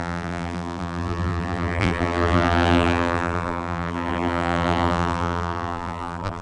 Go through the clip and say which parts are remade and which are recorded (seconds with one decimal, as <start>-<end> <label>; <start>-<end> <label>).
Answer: 0.0-6.4 remade

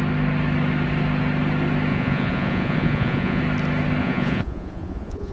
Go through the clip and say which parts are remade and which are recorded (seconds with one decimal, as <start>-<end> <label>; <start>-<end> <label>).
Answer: 0.0-1.9 recorded; 1.9-3.4 remade; 3.4-4.0 recorded; 4.0-5.3 remade

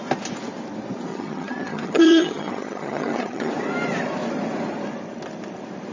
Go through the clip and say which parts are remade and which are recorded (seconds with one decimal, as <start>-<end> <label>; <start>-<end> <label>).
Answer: 0.0-1.1 recorded; 1.1-3.5 remade; 3.5-5.9 recorded

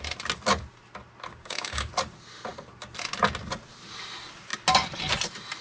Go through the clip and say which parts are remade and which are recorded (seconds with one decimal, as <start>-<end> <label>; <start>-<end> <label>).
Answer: 0.0-1.3 recorded; 1.3-1.9 remade; 1.9-5.6 recorded

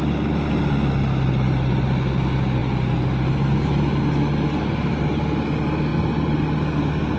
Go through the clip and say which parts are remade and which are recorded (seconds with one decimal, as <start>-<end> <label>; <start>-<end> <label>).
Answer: 0.0-7.2 recorded

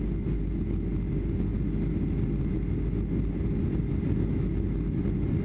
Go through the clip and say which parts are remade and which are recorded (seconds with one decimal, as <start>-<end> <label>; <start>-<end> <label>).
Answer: 0.0-5.4 recorded

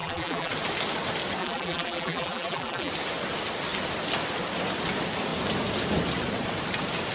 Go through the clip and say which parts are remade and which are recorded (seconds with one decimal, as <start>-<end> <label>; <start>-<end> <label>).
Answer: 0.0-0.5 remade; 0.5-1.4 recorded; 1.4-2.9 remade; 2.9-7.1 recorded